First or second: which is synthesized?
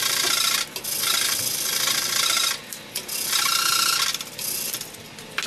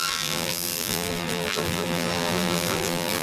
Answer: second